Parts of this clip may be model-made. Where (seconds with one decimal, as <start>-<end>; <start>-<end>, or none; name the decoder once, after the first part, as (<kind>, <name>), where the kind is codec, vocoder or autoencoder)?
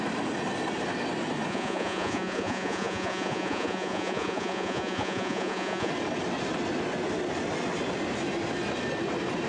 1.5-5.9 (vocoder, Vocos)